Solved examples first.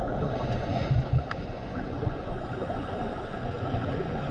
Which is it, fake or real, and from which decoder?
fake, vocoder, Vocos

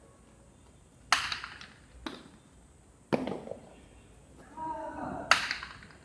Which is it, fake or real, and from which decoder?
real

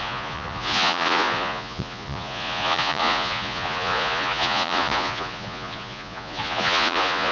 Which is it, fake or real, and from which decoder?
fake, vocoder, Vocos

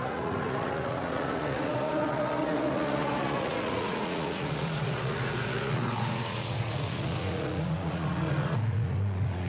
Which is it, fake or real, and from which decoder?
fake, vocoder, Vocos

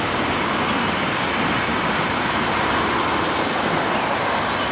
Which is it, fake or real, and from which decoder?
real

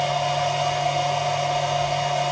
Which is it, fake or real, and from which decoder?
real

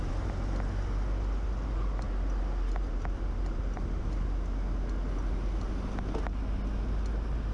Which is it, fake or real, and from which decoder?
real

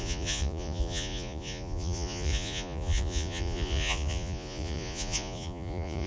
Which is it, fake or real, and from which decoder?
fake, vocoder, Vocos